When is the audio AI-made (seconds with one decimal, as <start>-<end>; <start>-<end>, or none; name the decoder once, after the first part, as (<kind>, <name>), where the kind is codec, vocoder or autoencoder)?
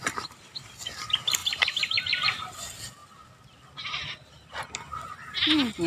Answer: 1.4-2.4 (vocoder, BigVGAN v2)